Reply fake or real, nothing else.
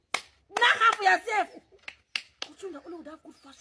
real